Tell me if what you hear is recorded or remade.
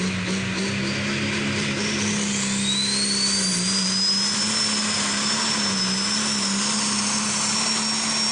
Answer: recorded